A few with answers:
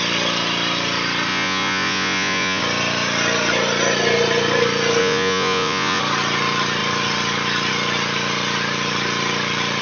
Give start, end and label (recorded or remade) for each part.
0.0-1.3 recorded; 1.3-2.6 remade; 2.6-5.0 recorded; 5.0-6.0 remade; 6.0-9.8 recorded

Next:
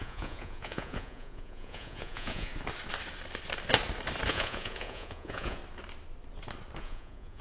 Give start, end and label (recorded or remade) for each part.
0.0-2.5 remade; 2.5-4.3 recorded; 4.3-5.6 remade; 5.6-6.8 recorded; 6.8-7.4 remade

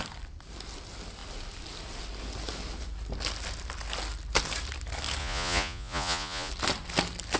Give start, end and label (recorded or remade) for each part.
0.0-5.2 recorded; 5.2-6.5 remade; 6.5-7.4 recorded